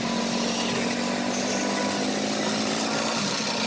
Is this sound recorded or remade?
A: recorded